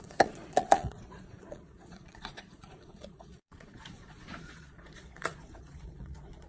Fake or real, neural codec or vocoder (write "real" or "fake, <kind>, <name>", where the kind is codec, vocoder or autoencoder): fake, vocoder, Vocos